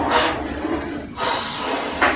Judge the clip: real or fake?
real